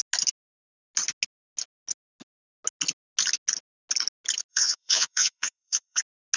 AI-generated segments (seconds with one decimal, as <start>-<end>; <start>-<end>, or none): 4.5-6.0